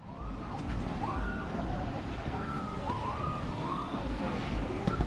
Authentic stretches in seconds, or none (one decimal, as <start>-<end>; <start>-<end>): 0.0-1.0; 1.6-2.1